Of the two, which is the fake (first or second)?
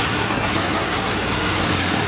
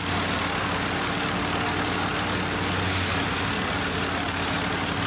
first